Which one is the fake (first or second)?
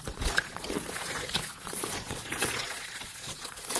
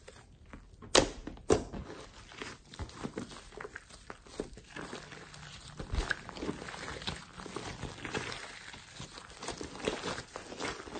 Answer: first